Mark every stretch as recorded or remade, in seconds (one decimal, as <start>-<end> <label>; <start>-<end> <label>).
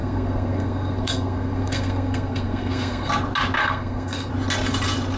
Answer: 0.0-3.1 remade; 3.1-3.6 recorded; 3.6-4.3 remade; 4.3-5.2 recorded